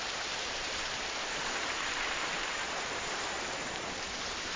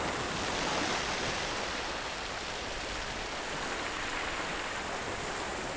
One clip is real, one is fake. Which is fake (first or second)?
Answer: first